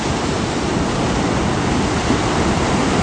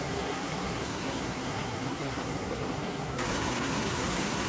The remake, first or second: second